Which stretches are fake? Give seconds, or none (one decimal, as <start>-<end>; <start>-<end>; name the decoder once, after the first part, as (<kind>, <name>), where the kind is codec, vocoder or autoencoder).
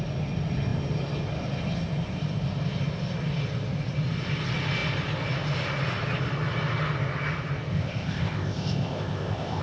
7.7-9.6 (codec, ZipCodec)